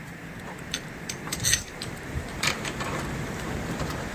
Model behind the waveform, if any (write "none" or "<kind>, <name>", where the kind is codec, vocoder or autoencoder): vocoder, BigVGAN v2